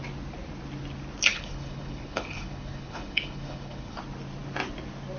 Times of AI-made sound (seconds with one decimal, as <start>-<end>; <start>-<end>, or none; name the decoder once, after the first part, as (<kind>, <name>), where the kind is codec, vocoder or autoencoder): 1.3-4.0 (codec, HILCodec)